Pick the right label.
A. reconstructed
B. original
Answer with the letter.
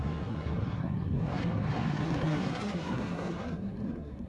A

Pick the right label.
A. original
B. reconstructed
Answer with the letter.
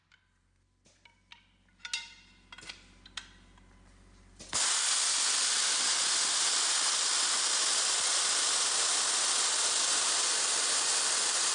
A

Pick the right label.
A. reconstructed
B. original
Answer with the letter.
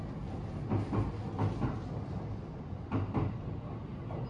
B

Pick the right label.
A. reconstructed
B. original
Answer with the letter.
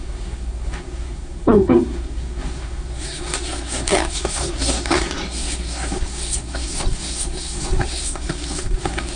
A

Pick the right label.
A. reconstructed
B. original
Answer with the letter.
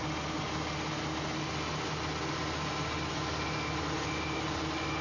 B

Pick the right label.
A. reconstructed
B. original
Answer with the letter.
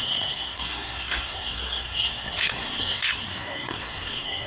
A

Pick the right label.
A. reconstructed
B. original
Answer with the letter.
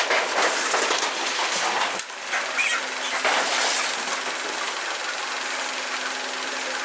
B